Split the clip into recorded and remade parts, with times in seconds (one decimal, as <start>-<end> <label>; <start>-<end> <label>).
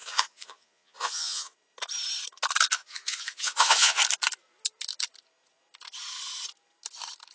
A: 0.0-1.5 remade; 1.5-2.8 recorded; 2.8-4.0 remade; 4.0-7.3 recorded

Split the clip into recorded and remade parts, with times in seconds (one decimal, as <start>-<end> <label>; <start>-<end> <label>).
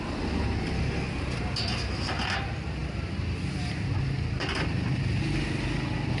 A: 0.0-6.2 recorded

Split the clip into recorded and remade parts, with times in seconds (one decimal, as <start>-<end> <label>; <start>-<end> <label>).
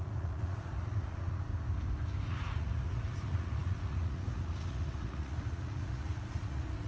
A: 0.0-1.5 remade; 1.5-2.2 recorded; 2.2-6.9 remade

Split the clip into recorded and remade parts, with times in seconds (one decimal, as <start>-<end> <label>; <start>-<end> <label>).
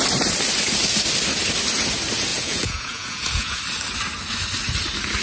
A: 0.0-2.3 recorded; 2.3-3.6 remade; 3.6-5.2 recorded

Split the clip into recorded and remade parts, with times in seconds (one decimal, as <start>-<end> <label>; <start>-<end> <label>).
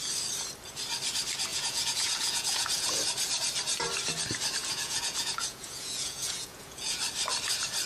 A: 0.0-1.5 recorded; 1.5-3.0 remade; 3.0-4.6 recorded; 4.6-7.0 remade; 7.0-7.9 recorded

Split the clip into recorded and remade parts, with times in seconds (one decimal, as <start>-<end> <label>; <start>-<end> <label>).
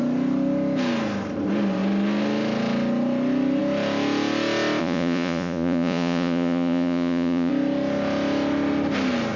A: 0.0-4.8 recorded; 4.8-7.5 remade; 7.5-9.4 recorded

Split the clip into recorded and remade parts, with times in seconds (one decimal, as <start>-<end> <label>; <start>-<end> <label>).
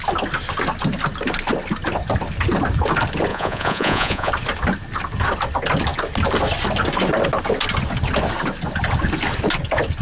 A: 0.0-3.3 recorded; 3.3-4.3 remade; 4.3-10.0 recorded